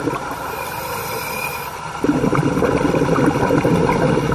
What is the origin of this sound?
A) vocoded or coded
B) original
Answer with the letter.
B